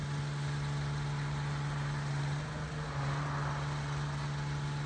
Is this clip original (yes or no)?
yes